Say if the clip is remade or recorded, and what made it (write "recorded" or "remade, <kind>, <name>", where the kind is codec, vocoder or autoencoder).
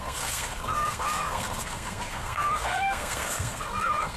remade, codec, SNAC